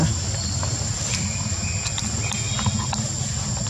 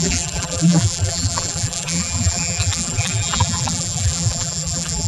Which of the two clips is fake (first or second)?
second